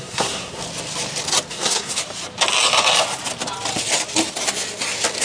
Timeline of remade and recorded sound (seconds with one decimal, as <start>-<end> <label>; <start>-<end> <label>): 0.0-0.6 remade; 0.6-1.5 recorded; 1.5-2.0 remade; 2.0-5.2 recorded